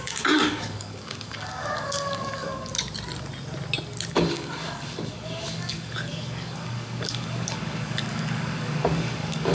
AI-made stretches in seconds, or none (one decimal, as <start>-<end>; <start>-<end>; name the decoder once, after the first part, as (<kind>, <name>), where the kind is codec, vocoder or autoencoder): 0.0-2.7 (codec, DAC); 4.1-9.5